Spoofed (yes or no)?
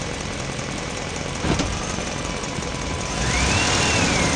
yes